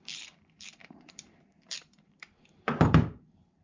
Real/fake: fake